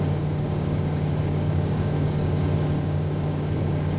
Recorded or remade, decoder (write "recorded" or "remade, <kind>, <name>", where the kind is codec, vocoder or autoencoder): remade, codec, DAC